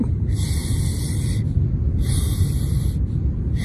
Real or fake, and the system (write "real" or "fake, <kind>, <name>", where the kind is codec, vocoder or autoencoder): real